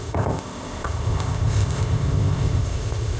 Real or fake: fake